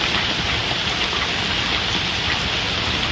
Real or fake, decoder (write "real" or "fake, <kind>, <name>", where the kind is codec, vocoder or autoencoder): real